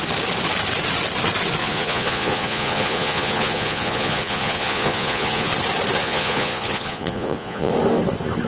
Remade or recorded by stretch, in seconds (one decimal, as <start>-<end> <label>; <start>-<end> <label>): 0.0-1.6 recorded; 1.6-5.5 remade; 5.5-6.0 recorded; 6.0-7.7 remade; 7.7-8.5 recorded